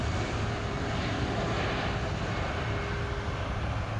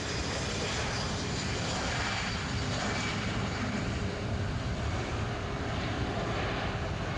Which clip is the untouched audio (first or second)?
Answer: first